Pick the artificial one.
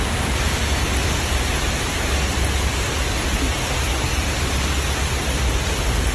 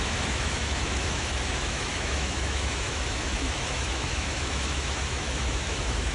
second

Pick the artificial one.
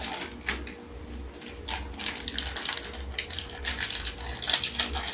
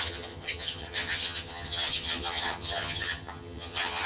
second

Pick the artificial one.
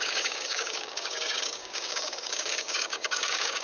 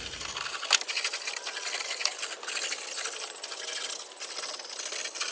first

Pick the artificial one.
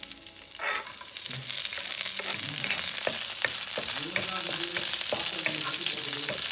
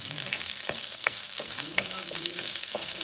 second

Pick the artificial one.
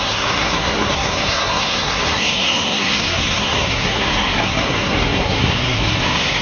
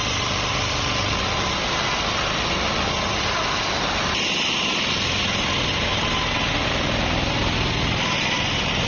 first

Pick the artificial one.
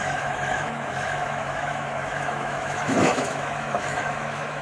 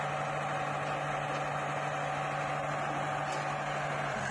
first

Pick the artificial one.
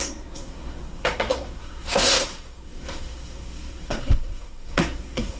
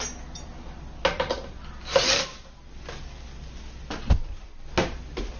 first